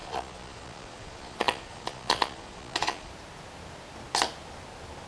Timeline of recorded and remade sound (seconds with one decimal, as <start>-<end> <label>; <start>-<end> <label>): 0.0-3.1 remade; 3.1-5.1 recorded

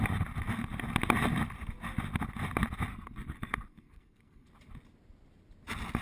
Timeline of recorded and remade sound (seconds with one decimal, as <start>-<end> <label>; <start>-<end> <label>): 0.0-2.9 recorded; 2.9-4.5 remade; 4.5-6.0 recorded

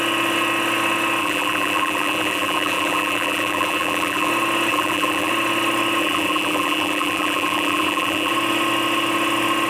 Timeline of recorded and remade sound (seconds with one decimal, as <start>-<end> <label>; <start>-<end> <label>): 0.0-1.2 recorded; 1.2-4.3 remade; 4.3-4.7 recorded; 4.7-5.3 remade; 5.3-6.0 recorded; 6.0-8.3 remade; 8.3-9.7 recorded

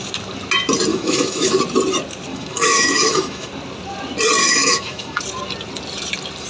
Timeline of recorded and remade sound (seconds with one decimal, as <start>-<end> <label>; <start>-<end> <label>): 0.0-0.9 recorded; 0.9-1.6 remade; 1.6-2.3 recorded; 2.3-3.5 remade; 3.5-4.4 recorded; 4.4-5.2 remade; 5.2-6.5 recorded

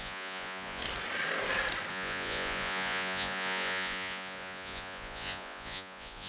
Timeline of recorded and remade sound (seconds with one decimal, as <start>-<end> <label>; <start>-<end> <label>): 0.0-0.8 remade; 0.8-1.9 recorded; 1.9-6.3 remade